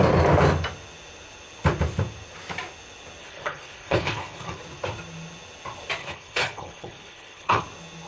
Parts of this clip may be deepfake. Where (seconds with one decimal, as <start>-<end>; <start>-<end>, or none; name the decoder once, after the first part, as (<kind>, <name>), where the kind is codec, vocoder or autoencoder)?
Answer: 3.2-4.6 (codec, HILCodec); 6.0-7.6